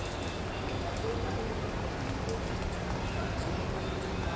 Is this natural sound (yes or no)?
yes